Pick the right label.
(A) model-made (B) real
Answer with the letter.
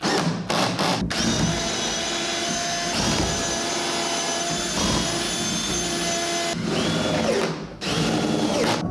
B